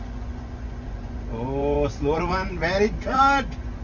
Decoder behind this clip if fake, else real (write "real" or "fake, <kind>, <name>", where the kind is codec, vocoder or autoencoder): fake, vocoder, Vocos